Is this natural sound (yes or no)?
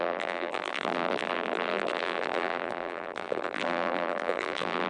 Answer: no